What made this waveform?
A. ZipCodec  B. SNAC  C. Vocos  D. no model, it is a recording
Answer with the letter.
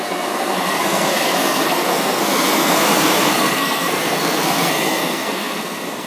B